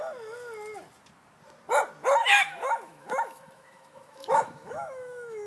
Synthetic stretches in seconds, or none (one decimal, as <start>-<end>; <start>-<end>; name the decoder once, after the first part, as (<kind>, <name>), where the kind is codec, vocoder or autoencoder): 2.2-5.5 (autoencoder, DAC-VAE)